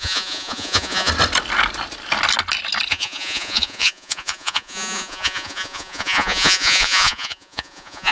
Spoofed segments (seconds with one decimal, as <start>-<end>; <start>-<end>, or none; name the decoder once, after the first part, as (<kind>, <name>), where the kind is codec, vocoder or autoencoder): 0.0-1.1 (vocoder, Vocos); 2.9-8.1